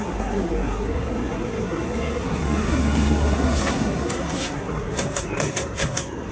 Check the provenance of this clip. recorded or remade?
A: remade